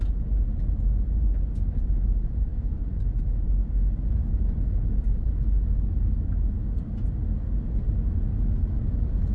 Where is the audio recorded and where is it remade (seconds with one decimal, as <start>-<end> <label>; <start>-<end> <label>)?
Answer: 0.0-9.3 recorded